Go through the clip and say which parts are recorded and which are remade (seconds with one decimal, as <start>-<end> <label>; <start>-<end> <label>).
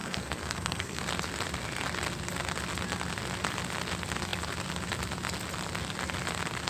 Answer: 0.0-1.0 remade; 1.0-6.7 recorded